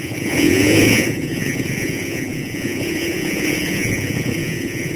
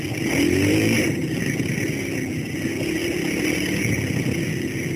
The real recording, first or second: second